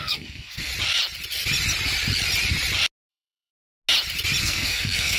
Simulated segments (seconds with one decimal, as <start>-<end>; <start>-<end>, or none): 0.0-0.7; 3.1-3.5; 4.4-5.2